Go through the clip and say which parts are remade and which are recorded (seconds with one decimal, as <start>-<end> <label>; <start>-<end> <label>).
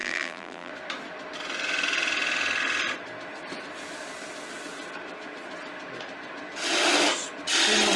0.0-0.7 remade; 0.7-8.0 recorded